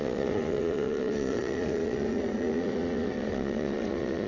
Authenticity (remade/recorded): remade